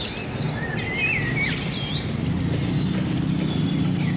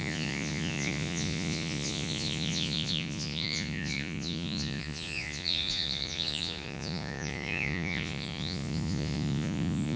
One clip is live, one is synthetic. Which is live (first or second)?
first